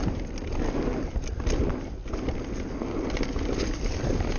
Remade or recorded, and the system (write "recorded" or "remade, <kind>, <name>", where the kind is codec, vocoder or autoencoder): recorded